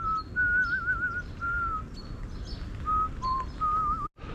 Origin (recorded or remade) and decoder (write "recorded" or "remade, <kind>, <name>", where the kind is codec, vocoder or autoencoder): recorded